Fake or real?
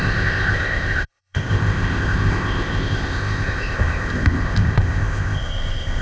fake